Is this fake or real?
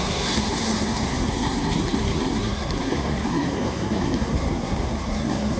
fake